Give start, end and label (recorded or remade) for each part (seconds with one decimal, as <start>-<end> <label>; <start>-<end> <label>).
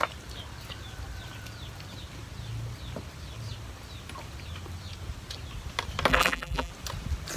0.0-6.1 recorded; 6.1-6.7 remade; 6.7-7.4 recorded